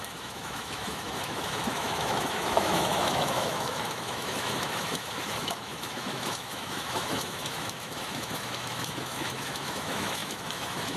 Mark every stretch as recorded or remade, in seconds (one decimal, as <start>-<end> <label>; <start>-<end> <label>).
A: 0.0-11.0 remade

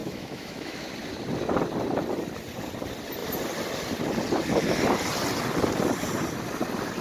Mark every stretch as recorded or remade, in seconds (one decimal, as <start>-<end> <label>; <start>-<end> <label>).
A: 0.0-0.9 remade; 0.9-7.0 recorded

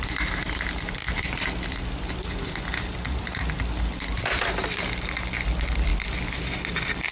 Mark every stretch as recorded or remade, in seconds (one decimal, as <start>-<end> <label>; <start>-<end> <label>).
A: 0.0-7.1 recorded

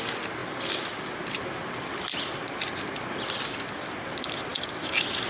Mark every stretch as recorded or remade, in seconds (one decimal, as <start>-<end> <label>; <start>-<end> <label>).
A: 0.0-5.3 recorded

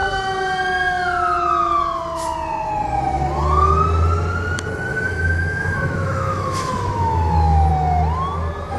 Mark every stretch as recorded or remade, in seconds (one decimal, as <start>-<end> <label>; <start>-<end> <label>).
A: 0.0-4.9 recorded; 4.9-7.7 remade; 7.7-8.8 recorded

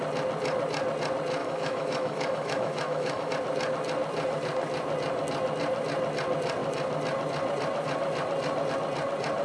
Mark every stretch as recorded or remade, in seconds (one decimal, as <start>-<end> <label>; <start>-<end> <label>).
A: 0.0-1.4 recorded; 1.4-3.3 remade; 3.3-9.4 recorded

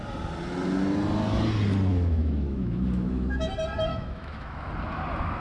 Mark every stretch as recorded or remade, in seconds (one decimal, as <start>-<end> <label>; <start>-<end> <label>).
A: 0.0-1.9 recorded; 1.9-3.5 remade; 3.5-3.9 recorded; 3.9-4.7 remade; 4.7-5.4 recorded